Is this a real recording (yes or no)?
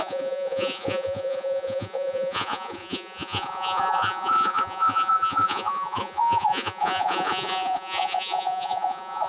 no